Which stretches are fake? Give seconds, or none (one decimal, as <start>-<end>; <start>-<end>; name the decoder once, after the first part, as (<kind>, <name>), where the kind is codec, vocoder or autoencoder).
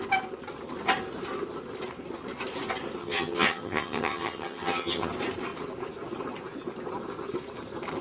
3.0-5.1 (vocoder, HiFi-GAN)